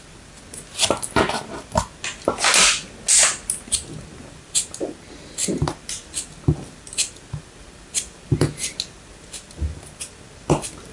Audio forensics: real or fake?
real